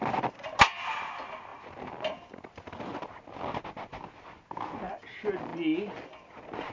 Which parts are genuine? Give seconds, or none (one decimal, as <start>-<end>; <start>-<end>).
0.0-6.7